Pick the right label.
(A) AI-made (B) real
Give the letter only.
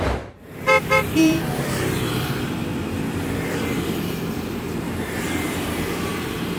A